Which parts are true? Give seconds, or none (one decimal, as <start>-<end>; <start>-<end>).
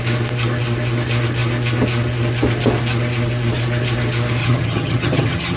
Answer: 0.0-4.4